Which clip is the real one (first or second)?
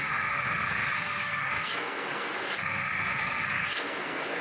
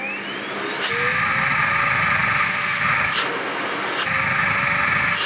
second